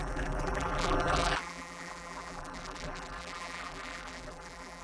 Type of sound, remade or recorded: remade